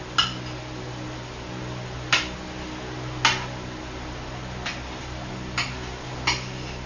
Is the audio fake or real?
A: real